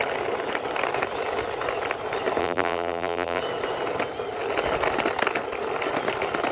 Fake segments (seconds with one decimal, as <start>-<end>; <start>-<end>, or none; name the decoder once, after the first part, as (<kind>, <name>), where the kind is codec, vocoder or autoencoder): 2.4-3.4 (vocoder, BigVGAN v2)